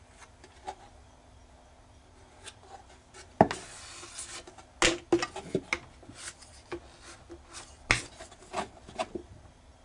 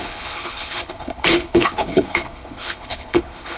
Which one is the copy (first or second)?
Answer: second